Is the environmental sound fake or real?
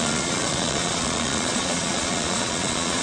fake